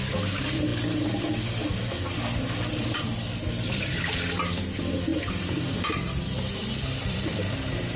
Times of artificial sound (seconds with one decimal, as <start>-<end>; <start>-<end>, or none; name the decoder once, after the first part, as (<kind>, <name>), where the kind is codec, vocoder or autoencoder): 5.1-8.0 (vocoder, BigVGAN v2)